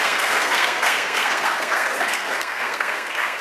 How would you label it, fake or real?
fake